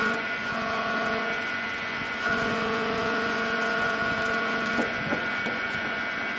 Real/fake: fake